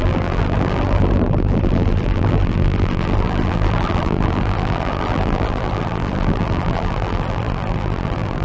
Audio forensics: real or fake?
fake